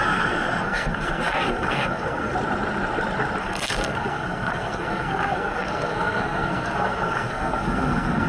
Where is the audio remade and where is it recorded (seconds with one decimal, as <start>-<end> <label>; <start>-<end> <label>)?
0.0-2.3 remade; 2.3-3.4 recorded; 3.4-8.3 remade